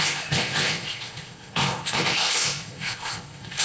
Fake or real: fake